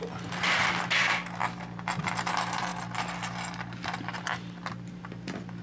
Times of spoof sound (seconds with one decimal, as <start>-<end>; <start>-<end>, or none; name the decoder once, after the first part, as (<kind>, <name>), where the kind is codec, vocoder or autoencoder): 2.7-4.7 (vocoder, BigVGAN v2)